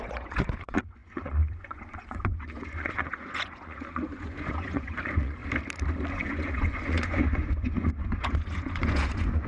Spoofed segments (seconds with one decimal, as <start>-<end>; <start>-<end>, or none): 0.0-5.4; 6.1-9.5